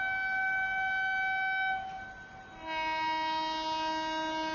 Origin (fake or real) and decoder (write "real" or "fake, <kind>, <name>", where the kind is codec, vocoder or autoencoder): real